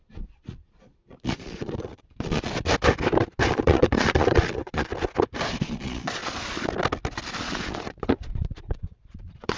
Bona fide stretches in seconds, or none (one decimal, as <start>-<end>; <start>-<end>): 2.5-3.5; 4.9-5.6; 6.2-7.4